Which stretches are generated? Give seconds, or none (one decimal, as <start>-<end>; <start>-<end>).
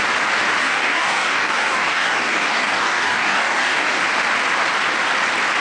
0.6-4.0